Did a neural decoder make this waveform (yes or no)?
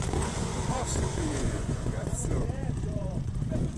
yes